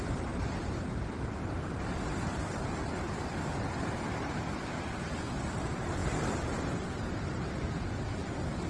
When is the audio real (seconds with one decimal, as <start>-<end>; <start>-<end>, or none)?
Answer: 0.0-8.7